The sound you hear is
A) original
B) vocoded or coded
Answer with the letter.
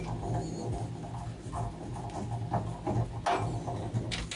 A